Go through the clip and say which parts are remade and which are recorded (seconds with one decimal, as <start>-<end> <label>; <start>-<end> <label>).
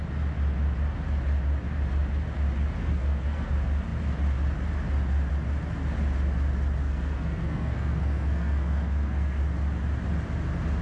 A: 0.0-2.8 recorded; 2.8-3.5 remade; 3.5-6.8 recorded; 6.8-9.4 remade; 9.4-10.8 recorded